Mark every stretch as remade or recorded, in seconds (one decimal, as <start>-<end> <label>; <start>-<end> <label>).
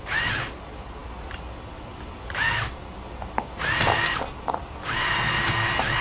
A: 0.0-6.0 recorded